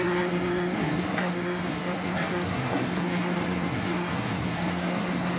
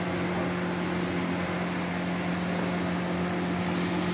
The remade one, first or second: first